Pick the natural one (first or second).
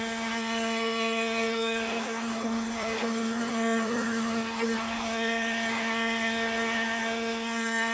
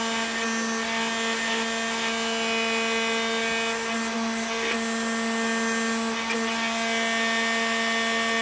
second